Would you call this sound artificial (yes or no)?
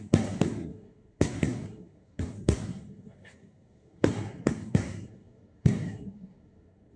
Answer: yes